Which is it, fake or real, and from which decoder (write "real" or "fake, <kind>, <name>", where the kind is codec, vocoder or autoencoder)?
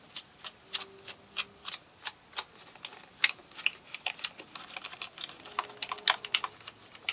real